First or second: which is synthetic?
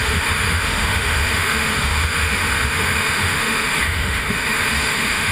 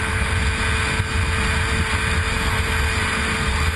first